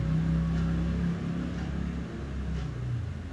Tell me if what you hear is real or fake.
real